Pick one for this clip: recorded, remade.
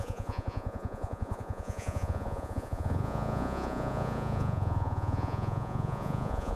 remade